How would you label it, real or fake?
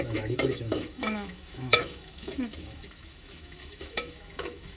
fake